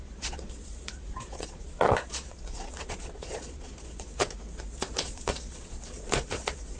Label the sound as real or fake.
fake